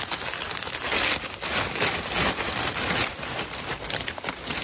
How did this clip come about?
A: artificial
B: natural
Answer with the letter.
B